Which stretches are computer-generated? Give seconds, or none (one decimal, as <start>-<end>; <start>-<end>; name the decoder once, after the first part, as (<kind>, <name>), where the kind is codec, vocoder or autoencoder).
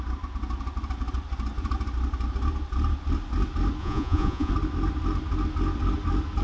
3.8-4.5 (vocoder, Vocos)